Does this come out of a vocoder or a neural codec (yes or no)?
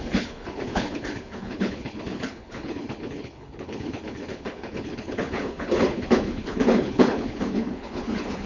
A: yes